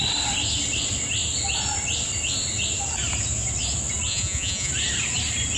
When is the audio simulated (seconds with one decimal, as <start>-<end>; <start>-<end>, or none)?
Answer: 4.1-4.7